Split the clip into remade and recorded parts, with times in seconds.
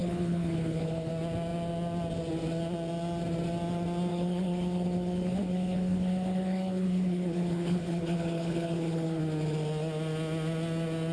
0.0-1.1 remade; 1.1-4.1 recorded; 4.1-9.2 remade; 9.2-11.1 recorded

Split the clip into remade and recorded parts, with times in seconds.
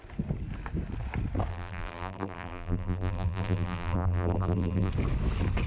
0.0-1.5 recorded; 1.5-4.9 remade; 4.9-5.7 recorded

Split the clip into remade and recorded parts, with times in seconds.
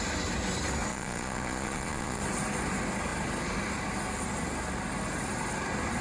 0.0-0.9 recorded; 0.9-2.2 remade; 2.2-6.0 recorded